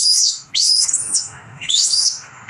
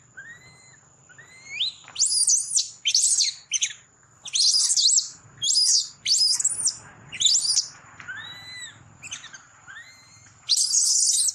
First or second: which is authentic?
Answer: second